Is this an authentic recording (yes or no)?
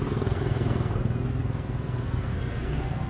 no